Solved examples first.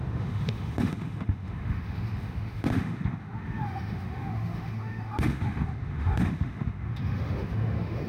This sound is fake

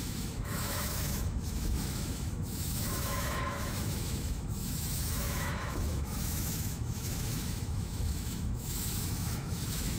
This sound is fake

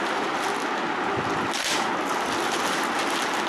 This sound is real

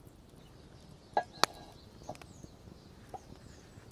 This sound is real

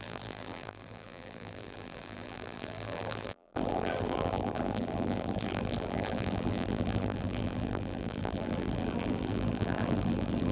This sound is fake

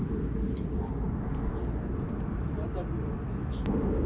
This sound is real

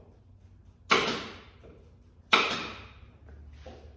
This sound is real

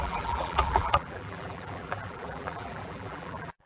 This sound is fake